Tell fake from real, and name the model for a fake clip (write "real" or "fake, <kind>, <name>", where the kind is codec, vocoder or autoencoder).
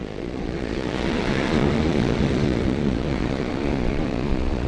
fake, vocoder, Vocos